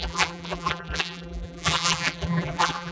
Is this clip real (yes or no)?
no